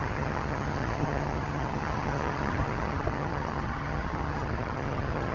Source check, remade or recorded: remade